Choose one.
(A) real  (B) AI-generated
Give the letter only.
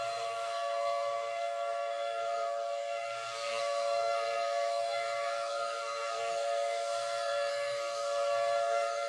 B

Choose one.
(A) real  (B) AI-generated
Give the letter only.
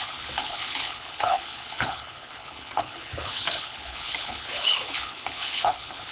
B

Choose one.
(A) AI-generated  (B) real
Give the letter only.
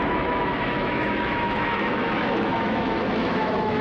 A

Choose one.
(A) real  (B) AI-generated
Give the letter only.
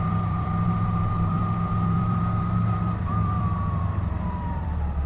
B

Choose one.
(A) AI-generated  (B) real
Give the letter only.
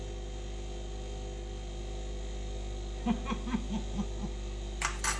B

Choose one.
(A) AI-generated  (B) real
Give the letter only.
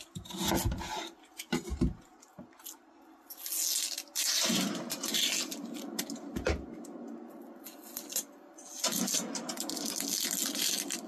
B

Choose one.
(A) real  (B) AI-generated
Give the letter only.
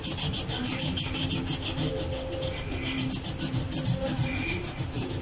A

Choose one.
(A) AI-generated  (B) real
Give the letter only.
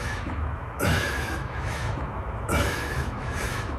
A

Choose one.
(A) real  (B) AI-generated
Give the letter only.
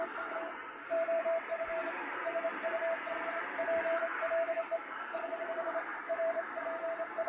B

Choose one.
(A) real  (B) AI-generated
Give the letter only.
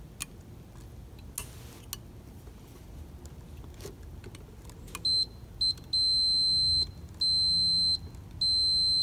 A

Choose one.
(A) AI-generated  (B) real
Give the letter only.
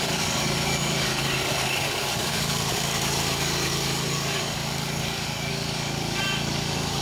A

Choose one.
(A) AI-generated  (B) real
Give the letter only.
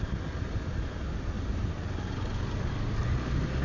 B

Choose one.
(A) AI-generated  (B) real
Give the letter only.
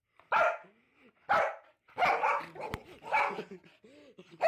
B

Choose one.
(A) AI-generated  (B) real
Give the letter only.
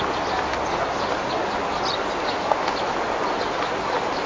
B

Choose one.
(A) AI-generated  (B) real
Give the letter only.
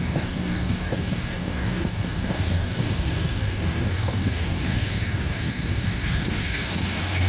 A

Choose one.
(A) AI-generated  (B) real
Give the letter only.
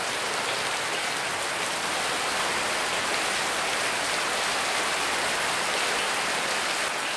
B